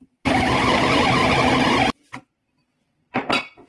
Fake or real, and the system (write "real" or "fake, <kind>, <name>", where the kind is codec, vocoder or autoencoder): real